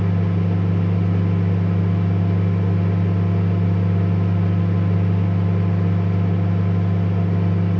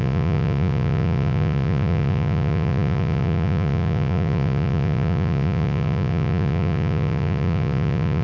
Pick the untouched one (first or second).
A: first